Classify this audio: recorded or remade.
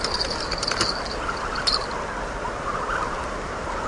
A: recorded